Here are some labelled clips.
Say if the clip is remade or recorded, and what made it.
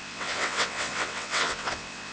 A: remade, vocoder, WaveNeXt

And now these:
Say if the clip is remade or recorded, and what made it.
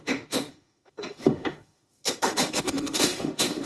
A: remade, autoencoder, DAC-VAE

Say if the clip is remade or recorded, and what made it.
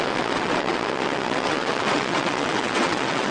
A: remade, vocoder, WaveNeXt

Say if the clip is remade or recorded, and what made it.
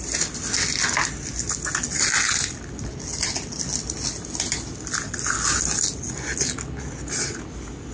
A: recorded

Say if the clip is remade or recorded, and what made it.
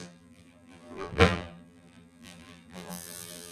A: remade, vocoder, BigVGAN v2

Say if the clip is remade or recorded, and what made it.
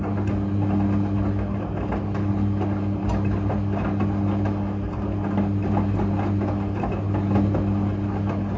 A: recorded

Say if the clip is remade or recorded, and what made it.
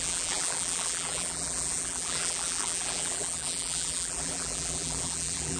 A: remade, vocoder, BigVGAN v2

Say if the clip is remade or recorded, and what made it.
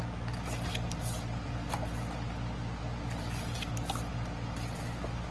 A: recorded